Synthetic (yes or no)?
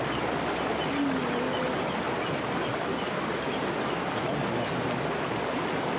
no